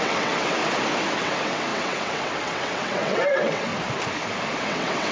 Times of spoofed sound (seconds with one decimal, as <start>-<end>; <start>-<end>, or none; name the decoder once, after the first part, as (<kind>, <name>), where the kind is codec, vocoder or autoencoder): 0.0-0.6 (vocoder, WaveNeXt); 1.2-3.7; 4.6-5.1